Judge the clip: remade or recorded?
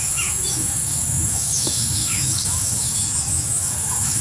remade